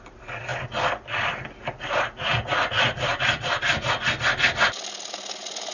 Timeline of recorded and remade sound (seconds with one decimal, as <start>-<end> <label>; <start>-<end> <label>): 0.0-5.7 recorded

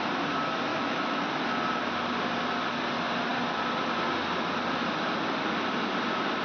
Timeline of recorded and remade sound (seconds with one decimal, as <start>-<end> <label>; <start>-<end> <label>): 0.0-0.7 recorded; 0.7-1.3 remade; 1.3-6.4 recorded

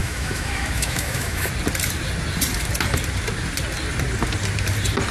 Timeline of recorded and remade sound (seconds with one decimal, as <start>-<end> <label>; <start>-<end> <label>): 0.0-1.5 remade; 1.5-5.1 recorded